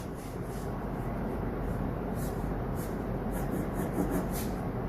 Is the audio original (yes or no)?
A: no